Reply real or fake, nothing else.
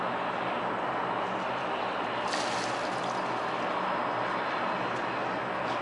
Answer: real